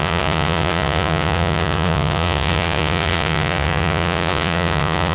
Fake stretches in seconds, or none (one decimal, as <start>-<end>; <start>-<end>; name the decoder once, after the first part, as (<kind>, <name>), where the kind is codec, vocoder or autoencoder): 0.0-5.1 (vocoder, Vocos)